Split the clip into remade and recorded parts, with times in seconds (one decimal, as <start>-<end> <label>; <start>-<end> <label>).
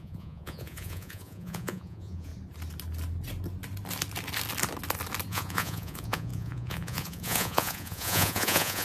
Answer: 0.0-2.3 remade; 2.3-5.3 recorded; 5.3-8.8 remade